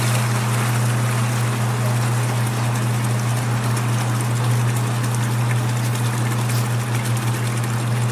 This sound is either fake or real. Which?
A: real